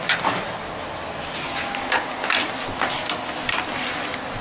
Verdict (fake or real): real